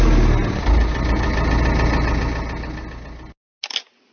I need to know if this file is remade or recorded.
recorded